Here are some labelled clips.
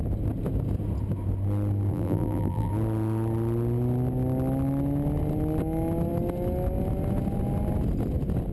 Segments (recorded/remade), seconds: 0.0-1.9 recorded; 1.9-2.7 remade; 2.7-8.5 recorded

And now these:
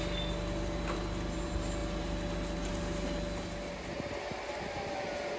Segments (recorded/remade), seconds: 0.0-5.4 recorded

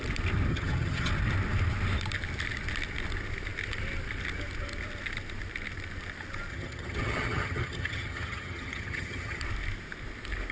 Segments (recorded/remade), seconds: 0.0-0.5 recorded; 0.5-1.1 remade; 1.1-6.5 recorded; 6.5-9.4 remade; 9.4-10.5 recorded

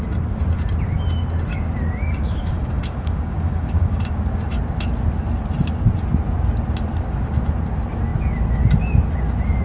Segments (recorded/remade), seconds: 0.0-2.4 recorded; 2.4-4.0 remade; 4.0-9.6 recorded